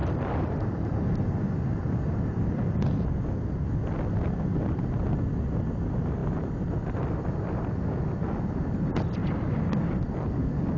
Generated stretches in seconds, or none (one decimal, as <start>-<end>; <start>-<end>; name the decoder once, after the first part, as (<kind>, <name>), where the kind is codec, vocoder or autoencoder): none